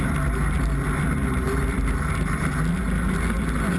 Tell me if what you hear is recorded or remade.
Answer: recorded